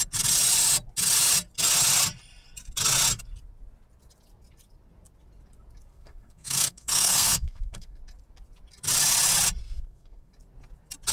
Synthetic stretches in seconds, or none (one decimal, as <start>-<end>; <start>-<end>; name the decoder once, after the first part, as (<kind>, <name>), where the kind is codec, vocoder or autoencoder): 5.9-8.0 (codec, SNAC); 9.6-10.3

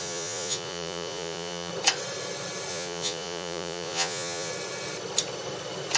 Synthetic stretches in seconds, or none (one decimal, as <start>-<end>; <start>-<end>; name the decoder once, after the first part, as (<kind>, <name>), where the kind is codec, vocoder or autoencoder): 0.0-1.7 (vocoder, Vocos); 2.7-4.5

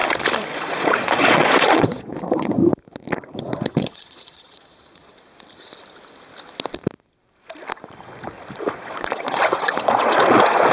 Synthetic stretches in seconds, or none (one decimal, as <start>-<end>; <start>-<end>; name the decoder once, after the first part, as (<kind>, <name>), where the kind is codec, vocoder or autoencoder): 0.5-2.6 (vocoder, Vocos); 3.4-5.1; 8.7-10.7

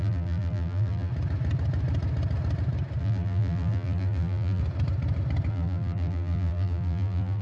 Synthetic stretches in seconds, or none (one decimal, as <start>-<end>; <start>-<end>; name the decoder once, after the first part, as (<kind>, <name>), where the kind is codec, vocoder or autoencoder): 0.0-1.1 (vocoder, BigVGAN v2); 3.0-4.6; 5.5-7.4

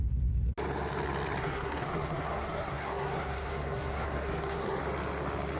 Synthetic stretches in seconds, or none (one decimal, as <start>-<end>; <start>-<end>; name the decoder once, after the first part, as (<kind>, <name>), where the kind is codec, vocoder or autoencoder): 1.4-4.8 (codec, SNAC)

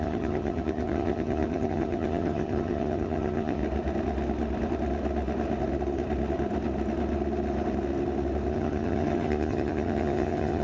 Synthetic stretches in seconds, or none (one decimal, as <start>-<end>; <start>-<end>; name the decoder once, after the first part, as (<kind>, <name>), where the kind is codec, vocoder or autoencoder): 0.0-3.6 (vocoder, HiFi-GAN); 8.5-10.6

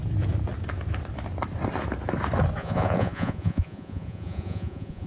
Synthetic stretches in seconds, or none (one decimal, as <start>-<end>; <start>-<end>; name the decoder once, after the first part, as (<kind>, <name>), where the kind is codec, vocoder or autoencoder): 2.6-5.1 (vocoder, Vocos)

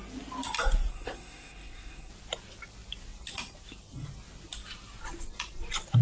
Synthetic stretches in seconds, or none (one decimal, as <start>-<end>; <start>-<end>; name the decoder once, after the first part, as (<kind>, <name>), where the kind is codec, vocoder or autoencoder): 0.9-2.1 (codec, SNAC)